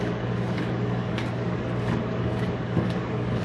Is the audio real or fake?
fake